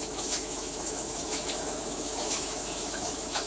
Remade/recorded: remade